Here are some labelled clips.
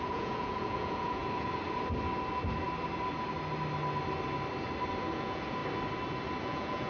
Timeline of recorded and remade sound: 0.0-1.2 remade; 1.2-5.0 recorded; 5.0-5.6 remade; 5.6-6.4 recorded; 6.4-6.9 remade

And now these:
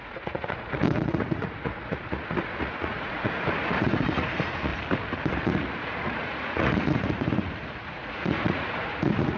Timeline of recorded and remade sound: 0.0-4.7 remade; 4.7-5.3 recorded; 5.3-9.4 remade

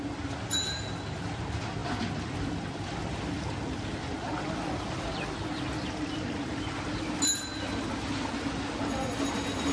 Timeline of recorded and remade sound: 0.0-9.7 recorded

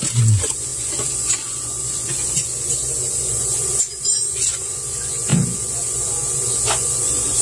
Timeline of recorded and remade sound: 0.0-7.4 remade